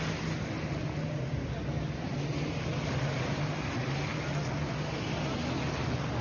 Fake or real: real